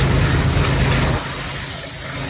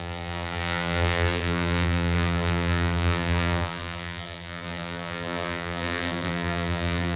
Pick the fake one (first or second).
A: second